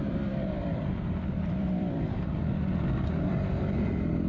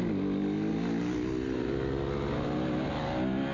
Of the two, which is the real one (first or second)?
second